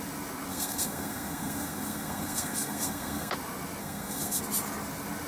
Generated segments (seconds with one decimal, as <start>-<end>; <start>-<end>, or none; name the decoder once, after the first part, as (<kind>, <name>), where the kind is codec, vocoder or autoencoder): 0.5-3.3 (codec, SNAC); 3.8-4.4